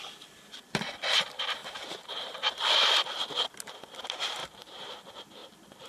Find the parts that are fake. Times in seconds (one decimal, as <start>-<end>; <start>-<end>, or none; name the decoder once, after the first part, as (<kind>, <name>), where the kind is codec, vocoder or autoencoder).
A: 1.6-2.5 (vocoder, BigVGAN v2); 4.4-4.9